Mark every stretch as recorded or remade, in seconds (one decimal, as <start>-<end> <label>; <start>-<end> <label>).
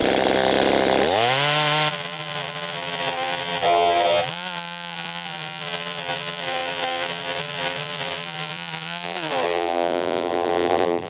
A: 0.0-1.9 recorded; 1.9-11.1 remade